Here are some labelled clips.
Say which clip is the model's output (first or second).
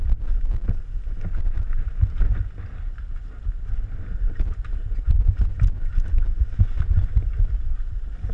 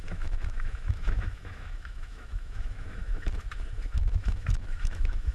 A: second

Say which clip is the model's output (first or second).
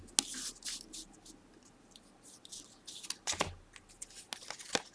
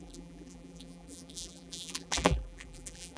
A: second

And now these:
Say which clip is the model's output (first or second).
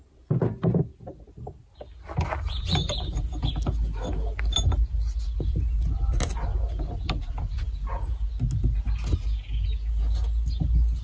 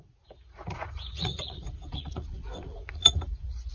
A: second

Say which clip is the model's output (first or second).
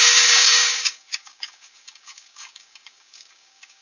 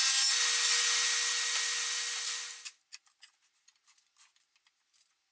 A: first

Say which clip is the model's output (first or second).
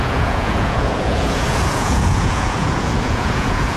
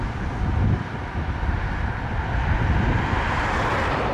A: first